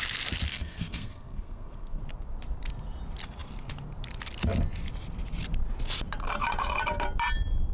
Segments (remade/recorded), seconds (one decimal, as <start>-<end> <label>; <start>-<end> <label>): 0.0-0.5 recorded; 0.5-2.0 remade; 2.0-7.7 recorded